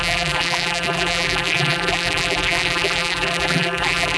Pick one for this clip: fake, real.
fake